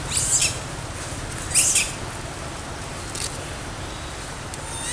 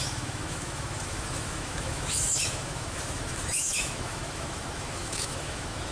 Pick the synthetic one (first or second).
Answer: second